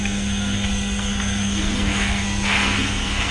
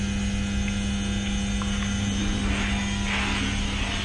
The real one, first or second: second